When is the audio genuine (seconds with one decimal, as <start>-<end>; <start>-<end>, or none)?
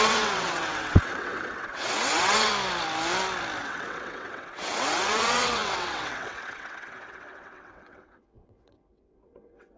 2.5-3.6